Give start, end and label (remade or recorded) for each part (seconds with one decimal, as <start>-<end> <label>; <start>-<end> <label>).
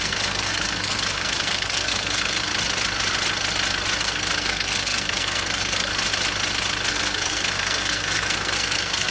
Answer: 0.0-2.5 remade; 2.5-4.0 recorded; 4.0-5.9 remade; 5.9-6.9 recorded; 6.9-9.1 remade